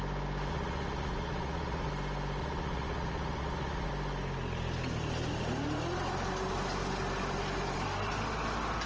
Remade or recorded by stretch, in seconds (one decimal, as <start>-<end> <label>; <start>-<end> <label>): 0.0-0.5 recorded; 0.5-1.9 remade; 1.9-2.4 recorded; 2.4-3.9 remade; 3.9-8.9 recorded